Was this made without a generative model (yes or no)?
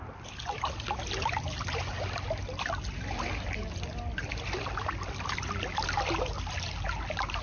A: yes